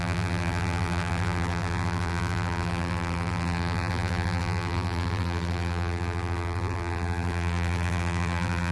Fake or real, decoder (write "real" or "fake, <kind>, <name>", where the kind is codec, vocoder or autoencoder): fake, vocoder, BigVGAN v2